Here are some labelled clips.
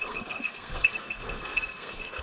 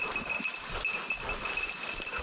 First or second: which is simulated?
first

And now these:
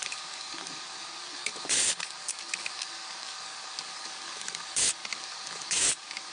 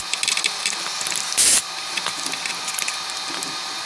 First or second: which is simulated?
first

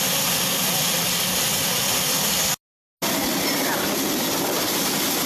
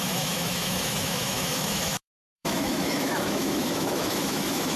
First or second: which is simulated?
second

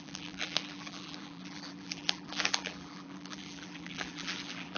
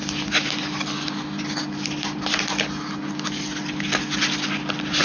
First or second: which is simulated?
first